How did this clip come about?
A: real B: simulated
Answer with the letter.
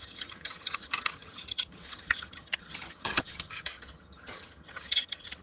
B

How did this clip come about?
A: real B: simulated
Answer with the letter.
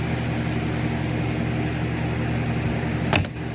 A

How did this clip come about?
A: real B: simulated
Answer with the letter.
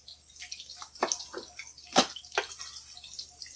A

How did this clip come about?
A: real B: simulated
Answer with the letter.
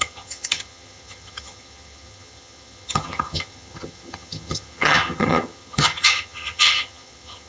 B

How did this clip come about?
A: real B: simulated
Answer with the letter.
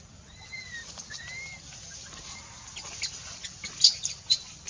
A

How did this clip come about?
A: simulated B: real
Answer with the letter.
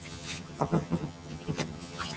A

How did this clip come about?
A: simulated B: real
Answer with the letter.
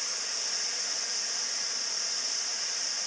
B